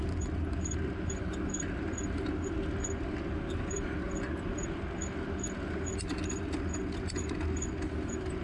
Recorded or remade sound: recorded